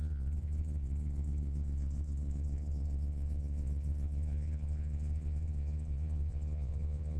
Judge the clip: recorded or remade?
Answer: remade